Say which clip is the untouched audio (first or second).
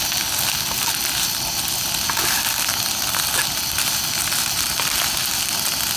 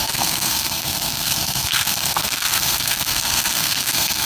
first